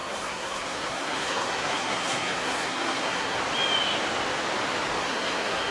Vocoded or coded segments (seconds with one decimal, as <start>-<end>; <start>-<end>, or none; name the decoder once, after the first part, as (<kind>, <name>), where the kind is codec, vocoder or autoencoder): 0.0-3.4 (codec, SNAC); 5.0-5.7